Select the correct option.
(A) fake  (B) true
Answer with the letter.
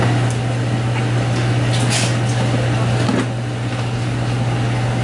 B